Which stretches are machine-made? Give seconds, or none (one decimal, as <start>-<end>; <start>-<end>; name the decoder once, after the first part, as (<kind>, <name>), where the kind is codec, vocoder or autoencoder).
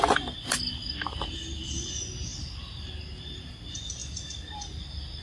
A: none